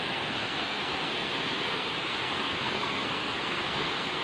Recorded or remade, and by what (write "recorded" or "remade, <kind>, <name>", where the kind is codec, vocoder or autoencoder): remade, codec, SNAC